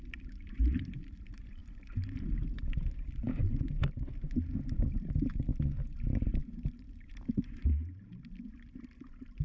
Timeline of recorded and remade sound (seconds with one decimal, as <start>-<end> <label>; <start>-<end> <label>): 0.0-3.4 remade; 3.4-5.3 recorded; 5.3-7.7 remade; 7.7-9.4 recorded